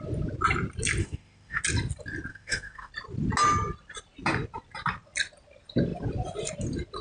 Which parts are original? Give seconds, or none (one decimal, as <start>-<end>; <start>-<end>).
0.0-1.0; 1.6-2.3; 2.9-7.0